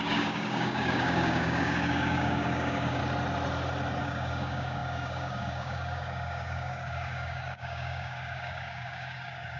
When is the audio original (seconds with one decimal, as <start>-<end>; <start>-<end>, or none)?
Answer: 3.0-4.0